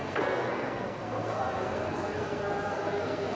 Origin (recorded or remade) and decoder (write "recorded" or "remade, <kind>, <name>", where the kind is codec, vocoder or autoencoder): remade, codec, SNAC